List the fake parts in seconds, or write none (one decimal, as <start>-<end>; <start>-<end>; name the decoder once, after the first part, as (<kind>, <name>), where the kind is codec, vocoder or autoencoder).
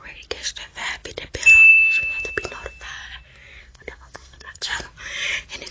1.7-2.2 (codec, SNAC); 3.6-4.9